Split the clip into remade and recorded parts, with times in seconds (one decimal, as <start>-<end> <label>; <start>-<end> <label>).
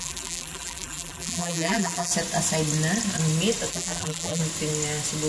0.0-2.1 remade; 2.1-3.7 recorded; 3.7-4.4 remade; 4.4-5.3 recorded